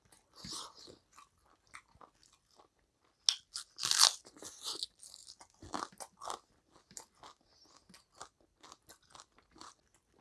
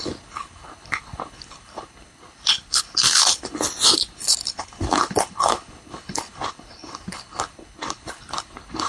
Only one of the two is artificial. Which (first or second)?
second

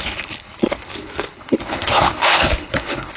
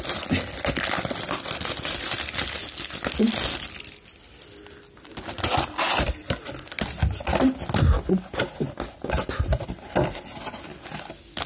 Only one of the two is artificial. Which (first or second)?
first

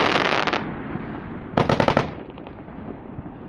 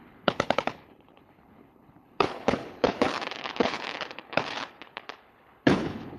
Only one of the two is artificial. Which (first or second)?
second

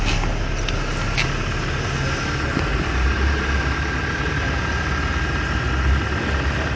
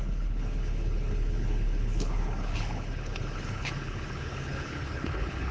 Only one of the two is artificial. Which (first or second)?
second